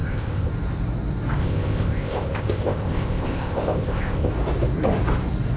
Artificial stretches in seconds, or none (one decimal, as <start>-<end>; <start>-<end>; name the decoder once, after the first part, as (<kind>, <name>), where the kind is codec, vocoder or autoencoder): 0.0-0.5 (codec, ZipCodec); 1.4-4.3